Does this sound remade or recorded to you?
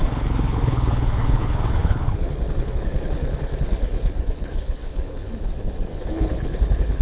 remade